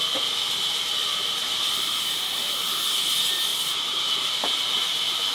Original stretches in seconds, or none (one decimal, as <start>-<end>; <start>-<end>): 0.0-1.0; 3.0-3.5; 4.0-5.3